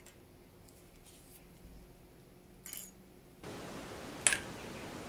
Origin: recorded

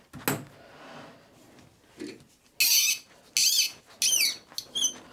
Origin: recorded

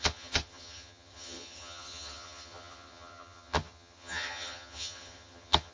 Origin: remade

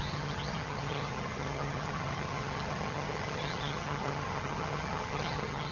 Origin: remade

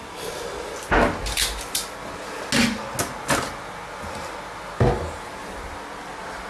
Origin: recorded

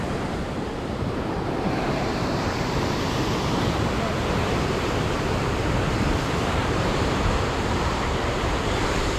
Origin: remade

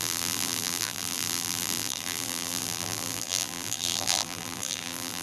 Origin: remade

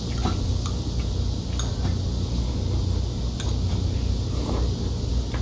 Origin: recorded